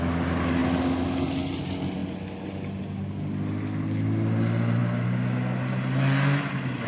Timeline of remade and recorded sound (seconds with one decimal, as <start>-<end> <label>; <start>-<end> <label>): 0.0-6.9 recorded